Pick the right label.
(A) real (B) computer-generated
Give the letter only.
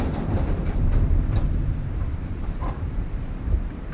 B